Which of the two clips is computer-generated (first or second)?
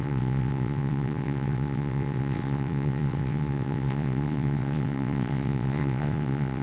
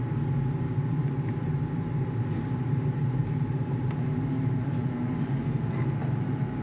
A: first